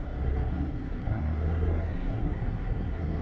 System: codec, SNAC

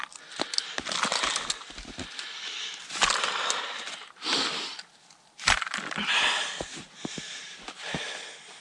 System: none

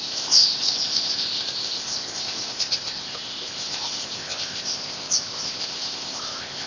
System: codec, ZipCodec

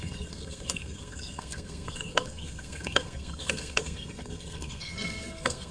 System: codec, SNAC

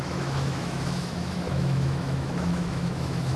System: autoencoder, DAC-VAE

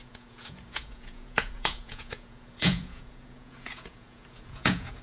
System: vocoder, Vocos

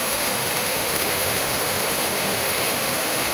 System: autoencoder, DAC-VAE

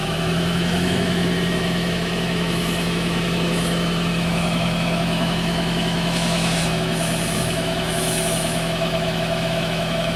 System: autoencoder, DAC-VAE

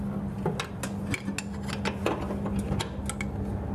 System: none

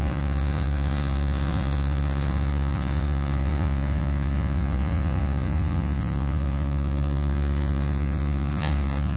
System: vocoder, Vocos